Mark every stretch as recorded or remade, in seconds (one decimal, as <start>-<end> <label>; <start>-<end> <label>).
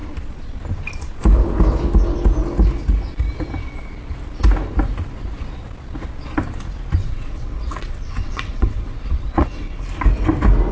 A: 0.0-7.0 recorded; 7.0-9.8 remade; 9.8-10.7 recorded